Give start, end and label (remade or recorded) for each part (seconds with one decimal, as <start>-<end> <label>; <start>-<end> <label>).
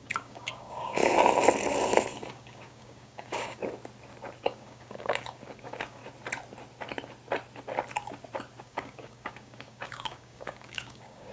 0.0-1.0 remade; 1.0-2.3 recorded; 2.3-3.6 remade; 3.6-4.4 recorded; 4.4-6.0 remade; 6.0-8.6 recorded; 8.6-11.3 remade